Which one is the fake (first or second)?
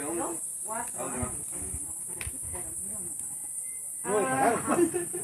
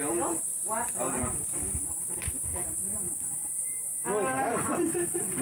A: second